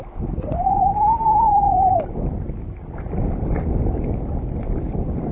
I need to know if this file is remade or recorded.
recorded